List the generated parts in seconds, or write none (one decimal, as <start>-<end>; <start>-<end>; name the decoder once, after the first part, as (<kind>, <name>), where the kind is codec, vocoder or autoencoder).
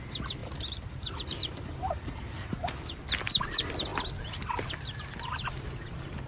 0.4-3.0 (vocoder, BigVGAN v2)